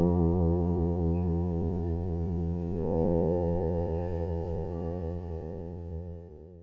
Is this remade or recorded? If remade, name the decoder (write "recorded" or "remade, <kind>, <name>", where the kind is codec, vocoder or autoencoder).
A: remade, vocoder, Vocos